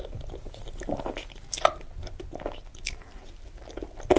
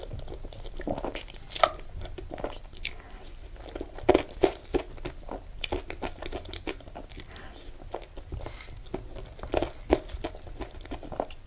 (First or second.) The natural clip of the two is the second